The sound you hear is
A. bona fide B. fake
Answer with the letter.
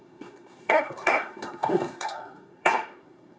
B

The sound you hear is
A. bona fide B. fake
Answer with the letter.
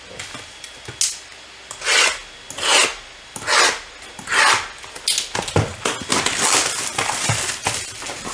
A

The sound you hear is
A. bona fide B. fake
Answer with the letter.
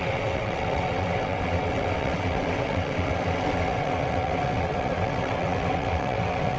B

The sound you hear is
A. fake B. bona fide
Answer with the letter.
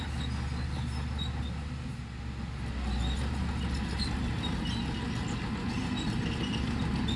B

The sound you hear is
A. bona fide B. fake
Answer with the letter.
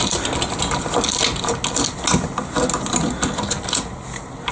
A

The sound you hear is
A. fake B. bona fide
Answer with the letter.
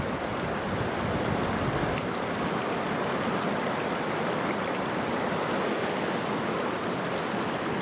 B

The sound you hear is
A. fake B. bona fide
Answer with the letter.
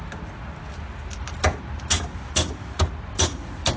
B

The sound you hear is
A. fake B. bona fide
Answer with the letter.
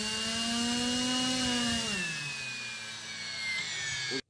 B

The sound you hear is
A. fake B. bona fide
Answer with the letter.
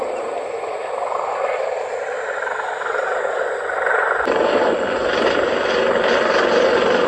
B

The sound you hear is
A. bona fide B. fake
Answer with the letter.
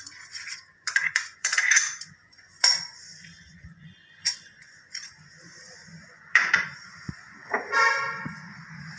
B